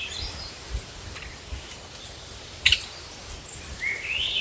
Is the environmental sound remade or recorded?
recorded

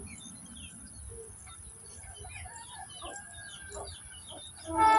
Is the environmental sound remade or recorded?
recorded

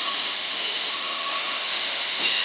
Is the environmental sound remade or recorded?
remade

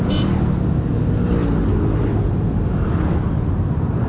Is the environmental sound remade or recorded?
recorded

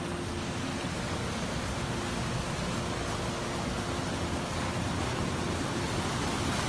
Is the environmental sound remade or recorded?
recorded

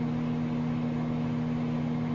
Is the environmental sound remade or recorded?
recorded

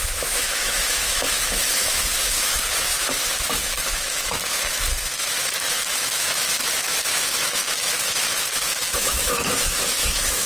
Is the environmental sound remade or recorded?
remade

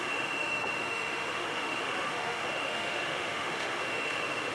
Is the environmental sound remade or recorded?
remade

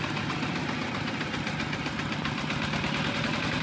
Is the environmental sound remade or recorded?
recorded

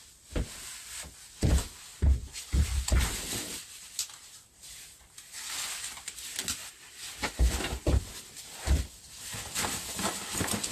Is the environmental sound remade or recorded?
recorded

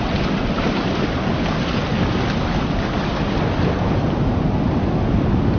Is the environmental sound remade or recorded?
recorded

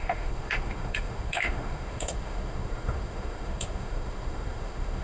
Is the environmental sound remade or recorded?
remade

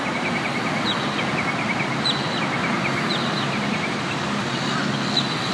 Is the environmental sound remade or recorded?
recorded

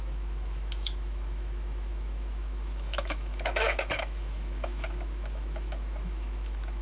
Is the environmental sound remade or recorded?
remade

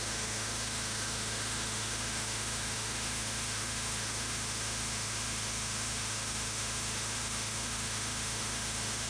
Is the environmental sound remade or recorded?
remade